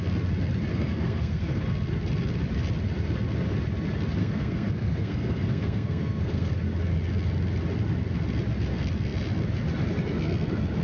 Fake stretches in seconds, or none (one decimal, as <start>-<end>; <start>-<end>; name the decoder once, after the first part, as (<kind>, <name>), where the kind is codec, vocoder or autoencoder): 0.7-1.6 (codec, SNAC); 4.2-6.5